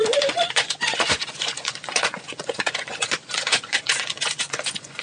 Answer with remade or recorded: remade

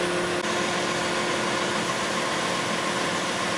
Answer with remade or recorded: recorded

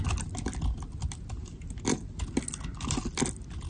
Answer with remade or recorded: recorded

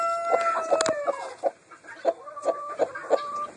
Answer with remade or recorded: recorded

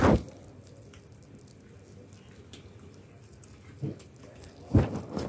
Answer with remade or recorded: recorded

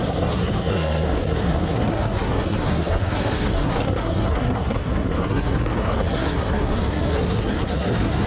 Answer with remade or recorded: remade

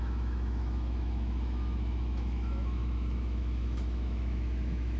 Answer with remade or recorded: remade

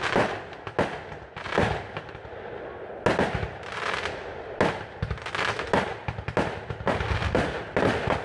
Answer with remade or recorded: recorded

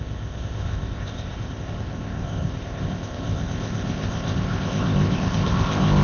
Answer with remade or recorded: remade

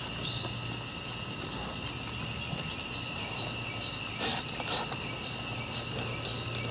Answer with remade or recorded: recorded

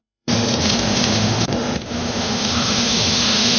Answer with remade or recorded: remade